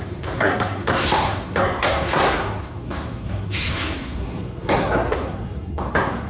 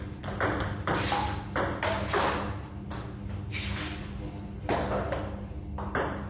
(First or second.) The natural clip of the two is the second